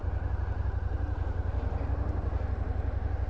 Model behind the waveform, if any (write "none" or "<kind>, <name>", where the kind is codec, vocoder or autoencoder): none